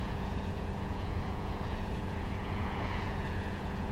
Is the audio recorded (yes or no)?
no